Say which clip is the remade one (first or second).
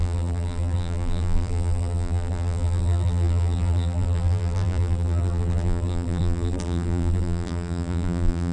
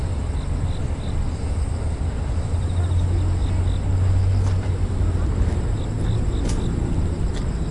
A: first